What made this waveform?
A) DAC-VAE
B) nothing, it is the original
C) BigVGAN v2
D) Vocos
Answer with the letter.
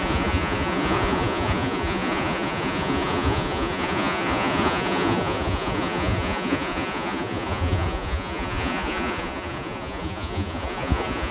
D